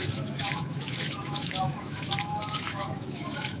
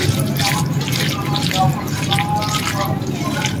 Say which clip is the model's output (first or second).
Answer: first